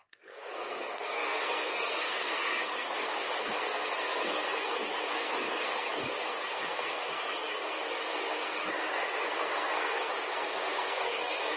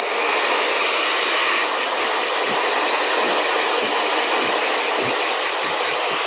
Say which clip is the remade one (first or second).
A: first